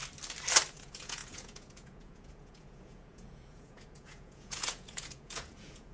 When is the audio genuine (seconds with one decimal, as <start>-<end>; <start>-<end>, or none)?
0.0-0.7